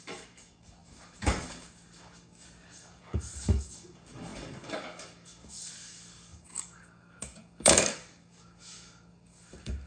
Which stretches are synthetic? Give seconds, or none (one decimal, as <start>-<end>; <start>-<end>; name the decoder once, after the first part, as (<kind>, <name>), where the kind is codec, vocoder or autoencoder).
0.0-9.9 (codec, DAC)